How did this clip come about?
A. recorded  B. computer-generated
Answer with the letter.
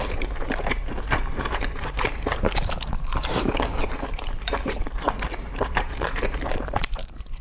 B